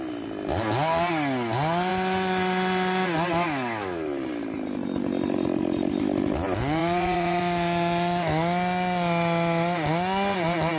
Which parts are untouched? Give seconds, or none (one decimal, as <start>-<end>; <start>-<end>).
0.0-6.8; 7.4-10.8

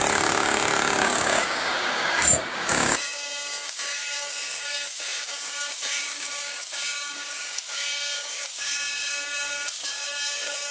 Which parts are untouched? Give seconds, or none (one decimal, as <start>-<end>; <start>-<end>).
none

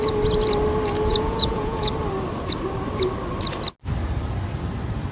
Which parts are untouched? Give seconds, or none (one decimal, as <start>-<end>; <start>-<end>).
0.0-1.1; 1.9-5.1

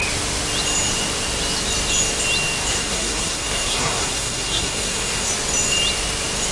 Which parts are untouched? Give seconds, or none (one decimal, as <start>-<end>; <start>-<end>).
0.0-2.7; 5.3-6.5

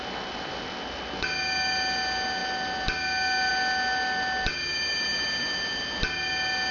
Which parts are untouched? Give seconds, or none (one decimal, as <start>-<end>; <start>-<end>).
0.0-6.7

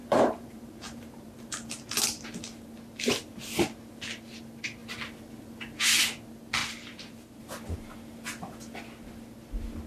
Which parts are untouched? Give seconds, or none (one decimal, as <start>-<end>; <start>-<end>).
1.7-6.6; 7.4-9.9

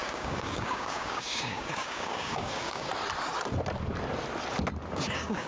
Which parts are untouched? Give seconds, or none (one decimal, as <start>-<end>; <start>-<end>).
2.9-4.9